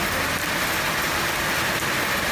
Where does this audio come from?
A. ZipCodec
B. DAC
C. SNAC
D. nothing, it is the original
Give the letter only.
D